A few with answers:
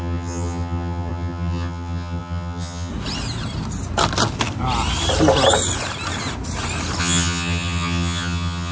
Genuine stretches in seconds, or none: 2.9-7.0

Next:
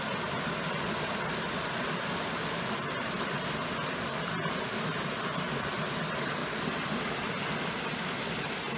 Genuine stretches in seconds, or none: 0.0-8.8